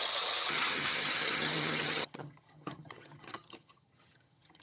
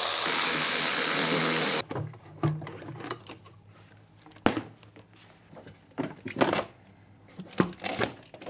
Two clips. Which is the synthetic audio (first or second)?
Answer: first